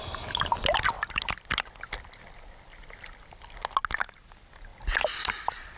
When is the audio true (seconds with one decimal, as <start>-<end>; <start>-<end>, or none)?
0.0-4.7